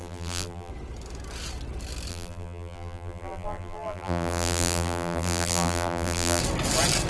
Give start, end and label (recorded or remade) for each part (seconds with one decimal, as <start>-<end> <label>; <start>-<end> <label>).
0.0-0.7 remade; 0.7-2.1 recorded; 2.1-6.4 remade; 6.4-7.1 recorded